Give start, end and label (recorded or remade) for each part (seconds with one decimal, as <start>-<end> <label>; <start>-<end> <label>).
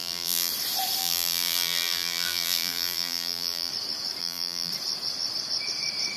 0.0-0.5 remade; 0.5-1.0 recorded; 1.0-3.7 remade; 3.7-4.2 recorded; 4.2-4.7 remade; 4.7-6.2 recorded